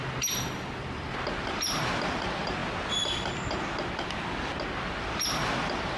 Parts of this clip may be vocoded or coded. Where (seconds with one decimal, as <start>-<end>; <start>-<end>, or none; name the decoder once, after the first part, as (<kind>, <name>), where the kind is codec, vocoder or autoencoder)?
none